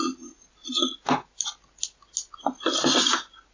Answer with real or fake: real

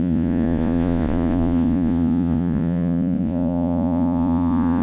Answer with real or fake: fake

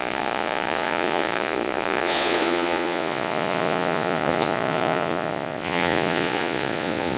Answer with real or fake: fake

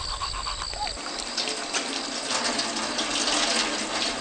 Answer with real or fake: real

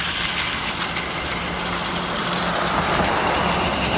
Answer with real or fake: real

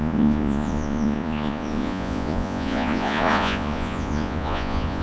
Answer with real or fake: fake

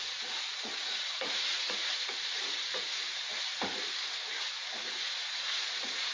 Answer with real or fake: fake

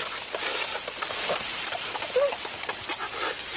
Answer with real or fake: real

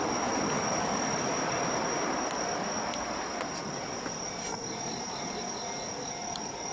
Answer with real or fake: real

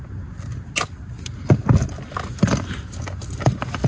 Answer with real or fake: real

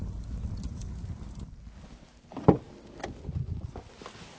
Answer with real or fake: real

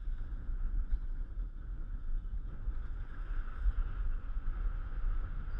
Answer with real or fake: fake